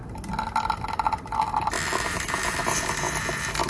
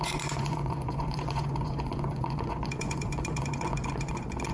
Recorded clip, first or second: first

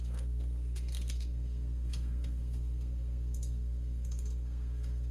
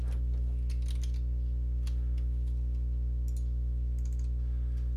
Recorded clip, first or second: second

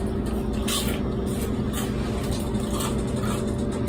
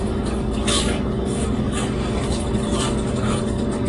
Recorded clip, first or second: first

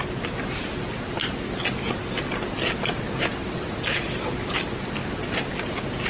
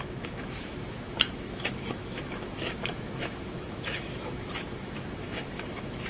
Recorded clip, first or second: first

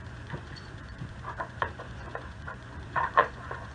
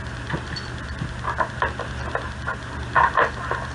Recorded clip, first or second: second